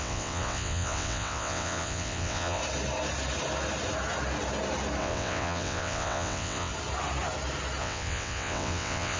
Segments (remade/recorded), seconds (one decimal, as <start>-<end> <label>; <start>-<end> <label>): 0.0-2.6 remade; 2.6-5.0 recorded; 5.0-6.7 remade; 6.7-7.8 recorded; 7.8-9.2 remade